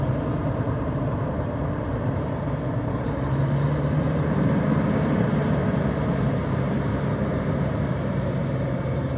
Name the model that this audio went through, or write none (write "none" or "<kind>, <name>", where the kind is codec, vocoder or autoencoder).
vocoder, BigVGAN v2